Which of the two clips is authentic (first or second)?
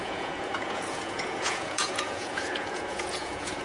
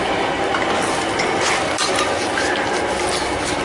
second